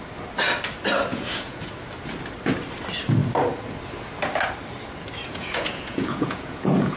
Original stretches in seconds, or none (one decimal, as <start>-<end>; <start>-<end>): 0.0-1.1; 1.7-5.3